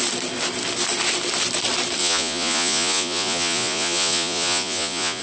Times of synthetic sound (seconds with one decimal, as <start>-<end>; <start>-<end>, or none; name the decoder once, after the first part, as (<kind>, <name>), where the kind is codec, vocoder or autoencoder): 2.0-5.2 (vocoder, Vocos)

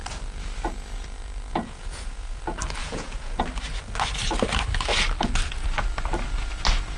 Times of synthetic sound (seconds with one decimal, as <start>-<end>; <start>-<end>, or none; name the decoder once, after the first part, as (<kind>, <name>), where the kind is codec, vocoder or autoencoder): 1.5-2.4 (vocoder, Vocos); 2.8-3.4

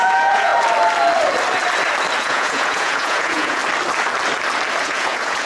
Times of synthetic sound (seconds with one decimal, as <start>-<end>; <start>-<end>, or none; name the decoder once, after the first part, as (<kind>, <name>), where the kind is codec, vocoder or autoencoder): 0.0-0.5 (vocoder, Vocos); 2.2-3.6; 4.8-5.5

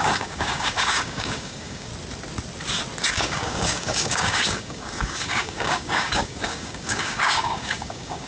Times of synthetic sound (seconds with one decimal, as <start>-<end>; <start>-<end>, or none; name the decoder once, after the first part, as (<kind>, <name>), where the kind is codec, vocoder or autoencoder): 0.0-1.9 (codec, DAC); 3.1-8.3